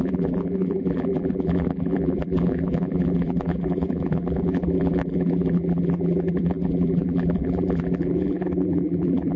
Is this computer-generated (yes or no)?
yes